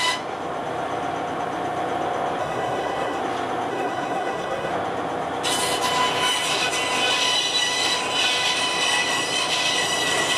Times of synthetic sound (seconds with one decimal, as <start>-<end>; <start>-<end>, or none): 2.4-3.2; 3.7-4.7